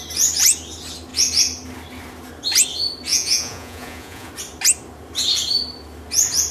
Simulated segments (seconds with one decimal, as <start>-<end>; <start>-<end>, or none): 3.1-4.3